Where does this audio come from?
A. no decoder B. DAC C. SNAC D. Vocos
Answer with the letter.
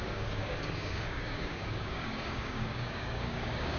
B